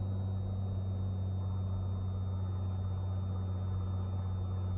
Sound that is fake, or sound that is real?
real